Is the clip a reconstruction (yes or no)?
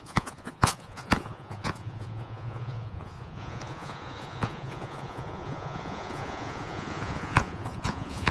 yes